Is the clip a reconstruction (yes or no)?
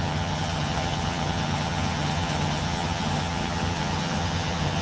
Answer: yes